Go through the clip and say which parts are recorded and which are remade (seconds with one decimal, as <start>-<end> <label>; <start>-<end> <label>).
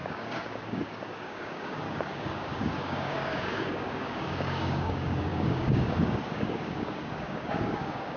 0.0-8.2 remade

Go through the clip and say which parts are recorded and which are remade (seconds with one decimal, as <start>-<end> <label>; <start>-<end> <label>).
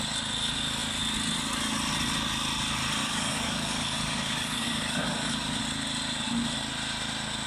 0.0-3.0 recorded; 3.0-5.6 remade; 5.6-7.5 recorded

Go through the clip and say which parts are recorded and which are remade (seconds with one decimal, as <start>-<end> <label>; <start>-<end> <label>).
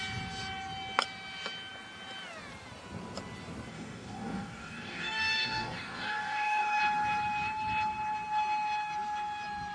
0.0-3.7 recorded; 3.7-6.8 remade; 6.8-9.7 recorded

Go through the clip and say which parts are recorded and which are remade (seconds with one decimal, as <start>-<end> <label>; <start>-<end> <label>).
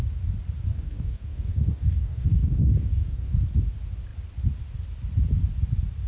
0.0-0.7 recorded; 0.7-3.3 remade; 3.3-6.1 recorded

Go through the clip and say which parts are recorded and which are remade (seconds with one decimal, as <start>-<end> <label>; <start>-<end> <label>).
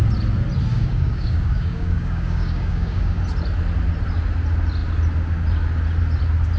0.0-0.7 recorded; 0.7-3.2 remade; 3.2-6.6 recorded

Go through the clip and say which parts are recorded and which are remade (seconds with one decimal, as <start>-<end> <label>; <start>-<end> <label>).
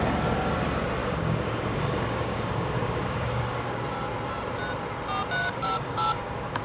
0.0-1.0 recorded; 1.0-3.8 remade; 3.8-5.4 recorded; 5.4-6.6 remade